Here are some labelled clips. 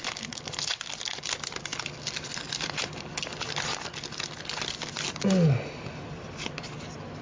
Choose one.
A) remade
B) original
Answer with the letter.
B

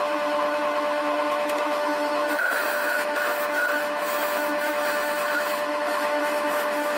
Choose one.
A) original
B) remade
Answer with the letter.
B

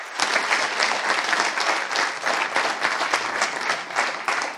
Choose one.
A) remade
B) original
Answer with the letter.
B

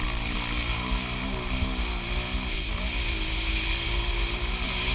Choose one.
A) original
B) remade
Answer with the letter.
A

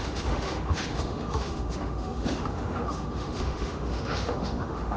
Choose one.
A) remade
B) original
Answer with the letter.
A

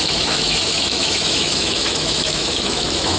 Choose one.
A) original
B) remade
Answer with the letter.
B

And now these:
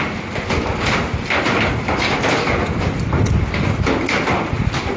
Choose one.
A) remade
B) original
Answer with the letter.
B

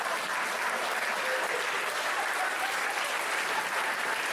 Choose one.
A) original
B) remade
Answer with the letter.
A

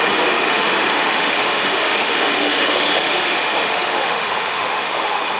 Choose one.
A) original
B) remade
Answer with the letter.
B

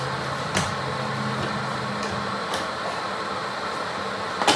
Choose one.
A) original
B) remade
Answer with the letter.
A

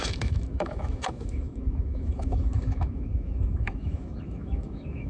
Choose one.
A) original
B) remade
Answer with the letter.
B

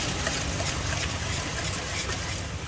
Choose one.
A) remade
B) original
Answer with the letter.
B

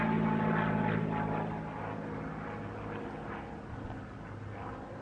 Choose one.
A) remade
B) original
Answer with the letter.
B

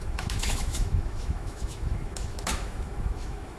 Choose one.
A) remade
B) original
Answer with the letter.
A